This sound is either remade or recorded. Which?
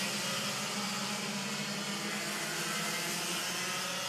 recorded